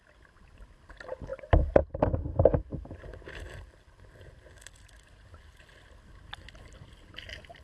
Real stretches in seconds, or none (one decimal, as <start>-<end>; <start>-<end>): 0.0-7.6